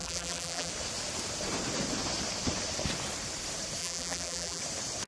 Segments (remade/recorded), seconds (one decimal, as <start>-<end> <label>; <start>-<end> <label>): 0.0-0.7 remade; 0.7-3.8 recorded; 3.8-4.6 remade; 4.6-5.1 recorded